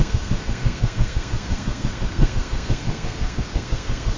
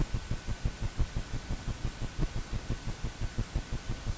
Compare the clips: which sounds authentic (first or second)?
second